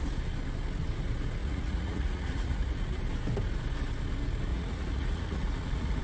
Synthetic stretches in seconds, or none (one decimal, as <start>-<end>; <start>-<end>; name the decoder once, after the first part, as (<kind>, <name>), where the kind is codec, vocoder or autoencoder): 1.4-3.0 (vocoder, Vocos); 4.5-6.0